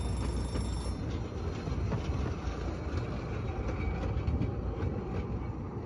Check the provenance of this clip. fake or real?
real